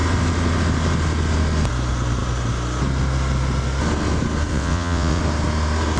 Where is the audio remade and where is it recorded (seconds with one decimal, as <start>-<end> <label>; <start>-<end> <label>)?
0.0-4.5 recorded; 4.5-5.2 remade; 5.2-6.0 recorded